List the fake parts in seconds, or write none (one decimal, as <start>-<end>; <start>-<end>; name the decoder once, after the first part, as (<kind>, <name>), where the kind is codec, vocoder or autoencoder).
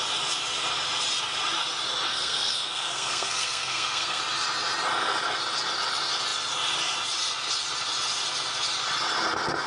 2.1-4.2 (codec, SNAC)